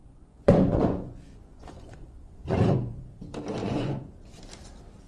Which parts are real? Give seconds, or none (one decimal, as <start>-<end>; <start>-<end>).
3.1-3.6; 4.2-5.1